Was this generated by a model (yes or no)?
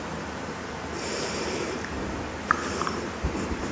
yes